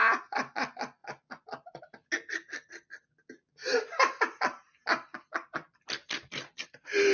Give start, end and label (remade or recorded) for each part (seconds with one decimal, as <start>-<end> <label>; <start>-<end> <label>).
0.0-7.1 recorded